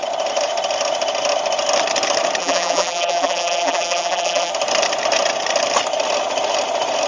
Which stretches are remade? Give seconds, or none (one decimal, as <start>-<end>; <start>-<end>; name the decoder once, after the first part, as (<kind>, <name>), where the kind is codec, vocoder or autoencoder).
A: 2.4-4.5 (vocoder, BigVGAN v2)